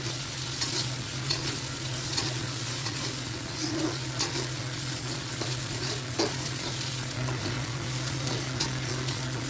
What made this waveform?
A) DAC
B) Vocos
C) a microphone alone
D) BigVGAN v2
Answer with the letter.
B